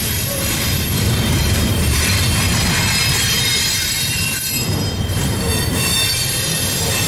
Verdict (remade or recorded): remade